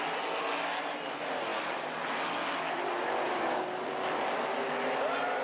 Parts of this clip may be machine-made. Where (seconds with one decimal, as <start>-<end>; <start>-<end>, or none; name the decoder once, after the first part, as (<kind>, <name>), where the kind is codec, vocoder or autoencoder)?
none